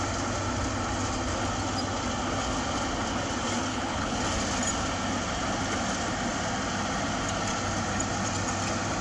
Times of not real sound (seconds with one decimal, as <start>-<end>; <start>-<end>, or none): 3.7-4.2